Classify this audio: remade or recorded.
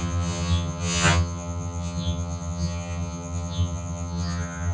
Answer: remade